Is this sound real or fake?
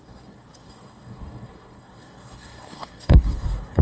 fake